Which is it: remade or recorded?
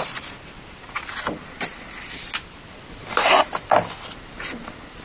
recorded